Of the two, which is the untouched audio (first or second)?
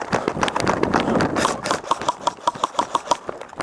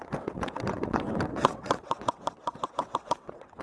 first